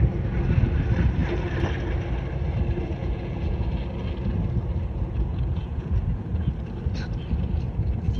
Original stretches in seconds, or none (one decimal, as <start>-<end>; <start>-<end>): 0.0-3.0; 3.6-5.3; 6.5-8.2